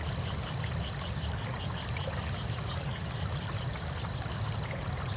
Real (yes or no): yes